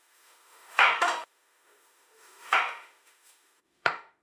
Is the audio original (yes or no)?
no